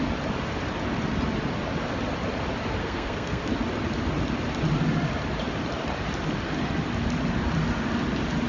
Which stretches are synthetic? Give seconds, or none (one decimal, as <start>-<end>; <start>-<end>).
2.8-3.4